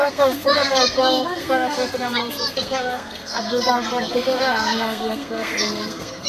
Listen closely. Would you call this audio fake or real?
fake